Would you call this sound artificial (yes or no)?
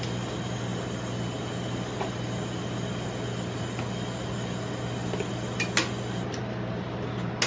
no